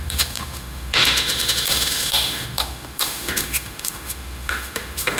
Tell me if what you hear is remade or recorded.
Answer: remade